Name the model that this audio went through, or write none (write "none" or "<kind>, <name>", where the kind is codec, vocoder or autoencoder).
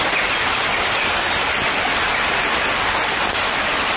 none